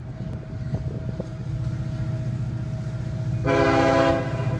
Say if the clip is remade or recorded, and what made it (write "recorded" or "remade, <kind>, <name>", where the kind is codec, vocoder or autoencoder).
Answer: recorded